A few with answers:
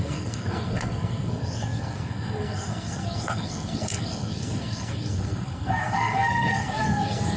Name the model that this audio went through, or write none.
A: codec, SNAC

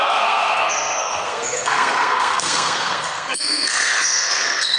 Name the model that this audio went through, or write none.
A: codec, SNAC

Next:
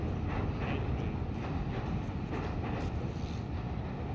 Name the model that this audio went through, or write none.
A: none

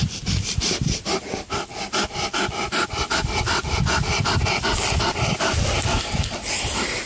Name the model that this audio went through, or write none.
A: none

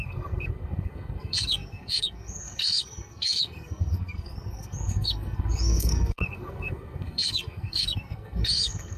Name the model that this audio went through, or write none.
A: codec, SNAC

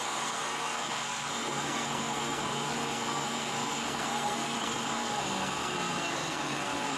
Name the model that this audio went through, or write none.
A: codec, SNAC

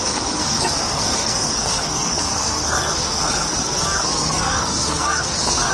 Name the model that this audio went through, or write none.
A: codec, SNAC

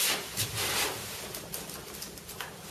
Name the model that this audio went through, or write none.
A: none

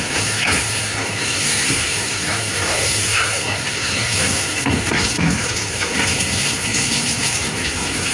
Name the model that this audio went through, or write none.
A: codec, SNAC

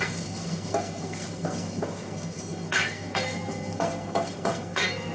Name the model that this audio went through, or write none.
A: codec, SNAC